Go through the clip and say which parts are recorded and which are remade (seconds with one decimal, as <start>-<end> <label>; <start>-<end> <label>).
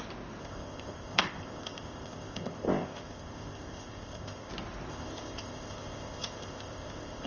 0.0-0.4 recorded; 0.4-4.5 remade; 4.5-4.9 recorded; 4.9-7.3 remade